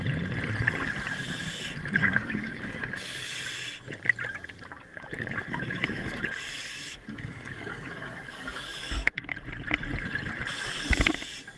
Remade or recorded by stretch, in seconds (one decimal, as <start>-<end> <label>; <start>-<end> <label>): 0.0-2.0 recorded; 2.0-3.5 remade; 3.5-4.7 recorded; 4.7-9.3 remade; 9.3-11.6 recorded